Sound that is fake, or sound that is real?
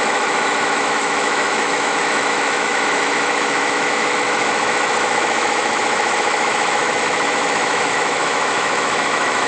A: fake